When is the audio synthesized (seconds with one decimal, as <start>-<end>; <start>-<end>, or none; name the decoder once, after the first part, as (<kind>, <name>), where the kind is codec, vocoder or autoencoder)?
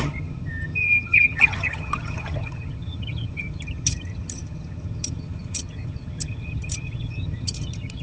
0.0-8.0 (vocoder, HiFi-GAN)